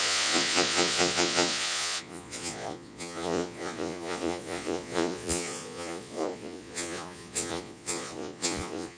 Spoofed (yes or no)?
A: yes